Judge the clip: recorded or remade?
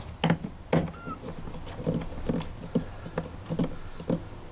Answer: recorded